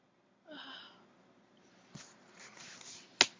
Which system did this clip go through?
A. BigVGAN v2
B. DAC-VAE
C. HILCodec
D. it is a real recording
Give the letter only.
D